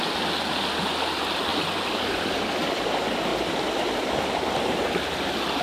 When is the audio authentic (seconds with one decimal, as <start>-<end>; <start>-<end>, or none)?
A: 0.0-3.3; 4.9-5.6